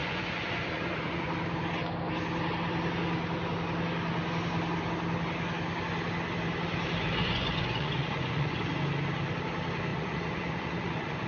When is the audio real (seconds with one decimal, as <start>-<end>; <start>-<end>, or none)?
1.3-7.2; 8.6-9.9